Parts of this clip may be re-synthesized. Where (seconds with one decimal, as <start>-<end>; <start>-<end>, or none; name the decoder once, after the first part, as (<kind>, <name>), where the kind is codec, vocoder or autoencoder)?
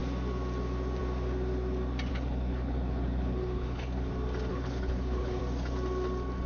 2.1-4.1 (codec, HILCodec); 4.5-5.4